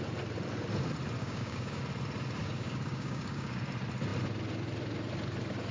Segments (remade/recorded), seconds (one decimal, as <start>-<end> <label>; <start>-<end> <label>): 0.0-1.2 recorded; 1.2-1.8 remade; 1.8-2.4 recorded; 2.4-3.6 remade; 3.6-5.7 recorded